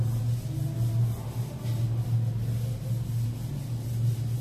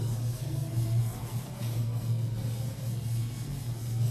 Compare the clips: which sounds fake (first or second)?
second